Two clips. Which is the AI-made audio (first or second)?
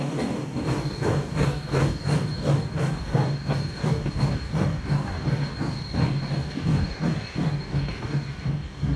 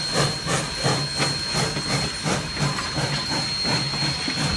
first